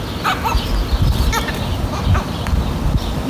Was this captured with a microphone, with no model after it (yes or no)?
yes